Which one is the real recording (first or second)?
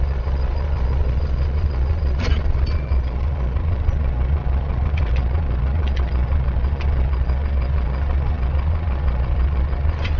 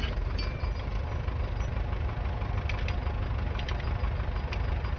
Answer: second